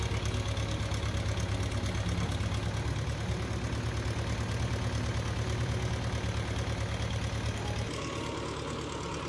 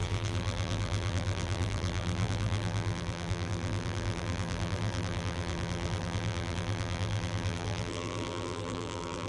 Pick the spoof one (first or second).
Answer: second